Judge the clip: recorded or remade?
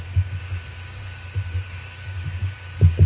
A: remade